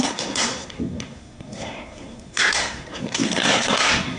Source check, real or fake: fake